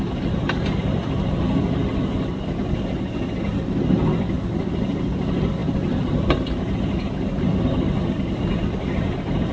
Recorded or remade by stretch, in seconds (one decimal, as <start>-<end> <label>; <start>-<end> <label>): 0.0-9.5 recorded